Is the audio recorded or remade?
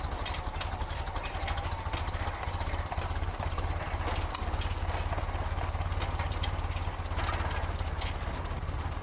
recorded